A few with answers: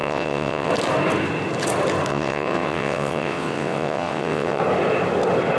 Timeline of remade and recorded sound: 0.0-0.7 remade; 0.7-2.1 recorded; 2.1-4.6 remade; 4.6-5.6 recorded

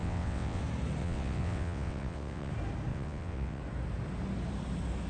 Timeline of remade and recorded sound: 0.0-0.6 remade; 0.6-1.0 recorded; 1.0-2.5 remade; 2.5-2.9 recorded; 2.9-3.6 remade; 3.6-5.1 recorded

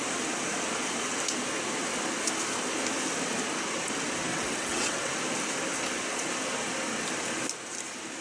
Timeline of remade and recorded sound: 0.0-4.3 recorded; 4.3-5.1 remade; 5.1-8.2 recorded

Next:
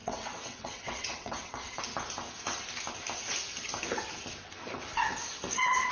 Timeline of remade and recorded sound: 0.0-1.8 remade; 1.8-5.9 recorded

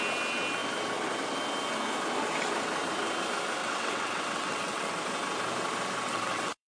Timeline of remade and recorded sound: 0.0-3.6 recorded; 3.6-4.9 remade; 4.9-6.1 recorded; 6.1-6.7 remade

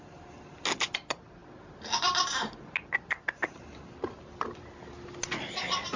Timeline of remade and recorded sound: 0.0-6.0 recorded